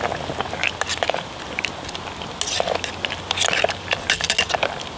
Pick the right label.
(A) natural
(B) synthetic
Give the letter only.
A